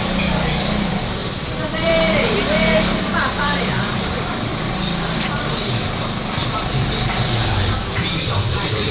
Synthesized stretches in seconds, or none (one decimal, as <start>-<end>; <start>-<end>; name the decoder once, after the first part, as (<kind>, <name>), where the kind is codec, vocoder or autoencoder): 0.0-4.5 (vocoder, BigVGAN v2); 5.3-8.9